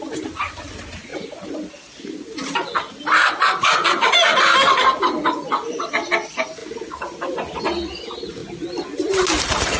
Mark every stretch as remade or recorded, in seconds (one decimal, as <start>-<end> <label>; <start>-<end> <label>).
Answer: 0.0-9.8 recorded